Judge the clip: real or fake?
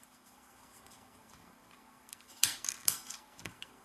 fake